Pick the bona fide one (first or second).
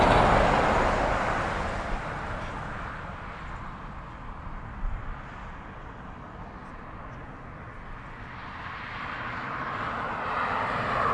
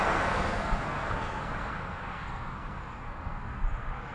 first